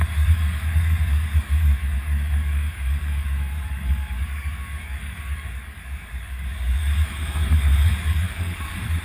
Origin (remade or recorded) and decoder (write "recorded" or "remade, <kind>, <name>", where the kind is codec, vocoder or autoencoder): remade, codec, DAC